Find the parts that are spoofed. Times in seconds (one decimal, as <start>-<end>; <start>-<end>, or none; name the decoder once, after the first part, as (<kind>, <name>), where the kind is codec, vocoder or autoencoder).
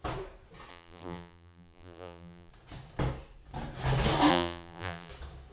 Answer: 0.7-2.5 (vocoder, BigVGAN v2); 4.3-5.1